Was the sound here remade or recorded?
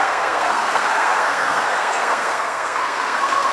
remade